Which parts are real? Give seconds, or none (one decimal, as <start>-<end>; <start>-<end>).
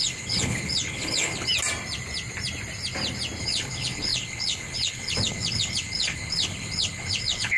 1.5-3.4